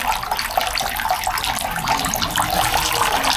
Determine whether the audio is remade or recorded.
recorded